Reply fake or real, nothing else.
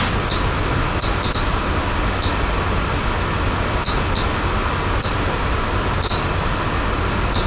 real